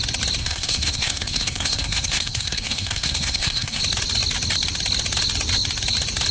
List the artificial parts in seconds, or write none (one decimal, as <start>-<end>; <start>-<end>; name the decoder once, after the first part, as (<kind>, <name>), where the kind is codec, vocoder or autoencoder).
0.4-3.8 (codec, SNAC)